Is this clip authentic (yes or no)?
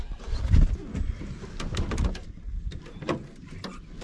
yes